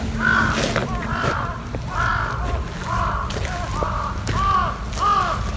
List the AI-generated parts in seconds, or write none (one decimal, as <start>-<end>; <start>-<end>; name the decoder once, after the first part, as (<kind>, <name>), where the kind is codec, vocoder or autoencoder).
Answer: 0.8-1.7 (vocoder, BigVGAN v2)

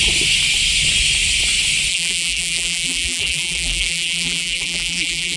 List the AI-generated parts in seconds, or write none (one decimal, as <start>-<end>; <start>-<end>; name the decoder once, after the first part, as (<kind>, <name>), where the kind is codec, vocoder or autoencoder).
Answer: 1.9-5.4 (vocoder, BigVGAN v2)

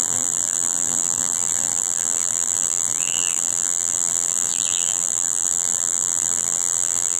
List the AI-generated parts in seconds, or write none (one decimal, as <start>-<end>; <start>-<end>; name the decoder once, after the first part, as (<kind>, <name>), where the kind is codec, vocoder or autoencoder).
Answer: 0.0-7.2 (vocoder, BigVGAN v2)

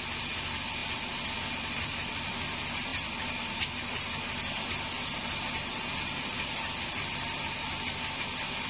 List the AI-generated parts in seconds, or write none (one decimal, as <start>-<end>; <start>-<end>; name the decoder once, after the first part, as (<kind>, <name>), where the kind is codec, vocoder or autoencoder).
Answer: 0.0-8.7 (vocoder, BigVGAN v2)

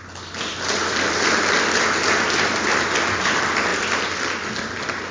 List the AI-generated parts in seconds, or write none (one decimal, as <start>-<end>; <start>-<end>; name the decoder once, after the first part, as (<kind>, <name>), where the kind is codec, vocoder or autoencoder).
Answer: 0.5-1.8 (vocoder, BigVGAN v2); 3.7-4.6

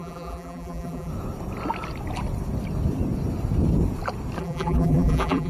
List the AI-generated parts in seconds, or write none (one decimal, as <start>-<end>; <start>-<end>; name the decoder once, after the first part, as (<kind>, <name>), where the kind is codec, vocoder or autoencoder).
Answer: 0.0-1.1 (vocoder, BigVGAN v2); 4.4-5.5